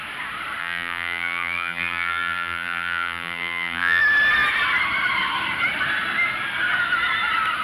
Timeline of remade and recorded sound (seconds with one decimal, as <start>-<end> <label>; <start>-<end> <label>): 0.0-0.6 recorded; 0.6-4.0 remade; 4.0-7.6 recorded

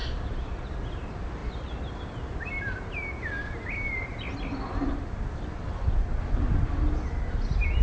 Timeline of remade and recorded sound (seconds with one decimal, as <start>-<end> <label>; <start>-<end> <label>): 0.0-0.8 remade; 0.8-1.4 recorded; 1.4-2.0 remade; 2.0-7.8 recorded